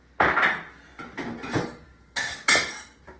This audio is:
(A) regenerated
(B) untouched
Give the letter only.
B